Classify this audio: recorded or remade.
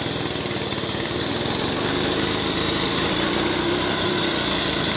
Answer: remade